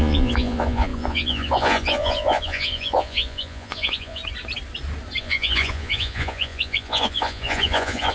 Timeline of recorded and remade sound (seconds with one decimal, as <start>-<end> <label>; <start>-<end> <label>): 0.0-4.2 remade; 4.2-5.2 recorded; 5.2-8.1 remade